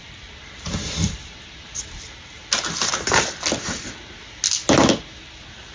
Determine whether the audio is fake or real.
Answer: real